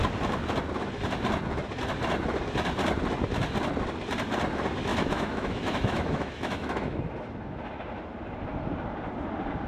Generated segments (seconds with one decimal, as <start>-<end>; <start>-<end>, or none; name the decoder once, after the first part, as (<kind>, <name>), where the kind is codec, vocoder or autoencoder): 4.9-7.0 (autoencoder, DAC-VAE)